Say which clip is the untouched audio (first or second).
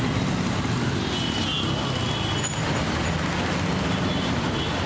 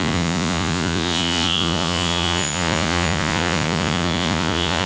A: first